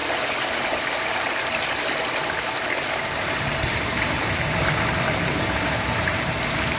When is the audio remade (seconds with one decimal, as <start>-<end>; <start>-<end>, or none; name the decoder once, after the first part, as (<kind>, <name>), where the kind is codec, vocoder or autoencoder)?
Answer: 2.6-6.8 (vocoder, BigVGAN v2)